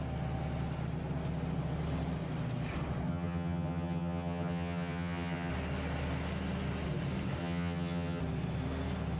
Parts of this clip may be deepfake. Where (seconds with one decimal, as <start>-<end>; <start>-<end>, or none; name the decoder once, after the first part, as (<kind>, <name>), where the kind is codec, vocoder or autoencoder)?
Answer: 3.1-5.5 (vocoder, HiFi-GAN); 7.4-8.2